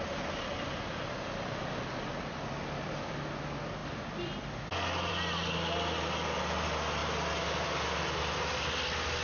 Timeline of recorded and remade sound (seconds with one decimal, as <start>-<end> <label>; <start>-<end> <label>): 0.0-9.2 recorded